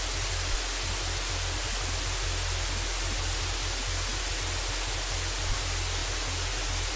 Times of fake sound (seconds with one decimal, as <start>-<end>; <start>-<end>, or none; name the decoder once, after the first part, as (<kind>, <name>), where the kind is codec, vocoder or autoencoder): none